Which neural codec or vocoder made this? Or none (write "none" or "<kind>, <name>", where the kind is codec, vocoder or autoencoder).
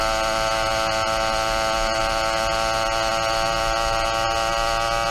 none